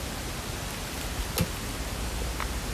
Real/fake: real